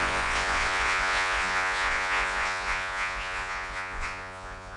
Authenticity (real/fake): fake